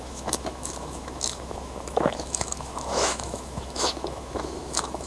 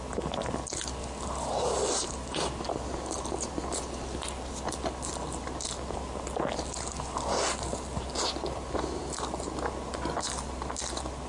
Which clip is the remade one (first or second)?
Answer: first